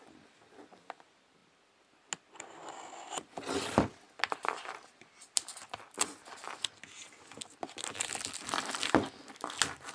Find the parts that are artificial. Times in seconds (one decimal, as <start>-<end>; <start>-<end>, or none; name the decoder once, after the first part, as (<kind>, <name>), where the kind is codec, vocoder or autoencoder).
none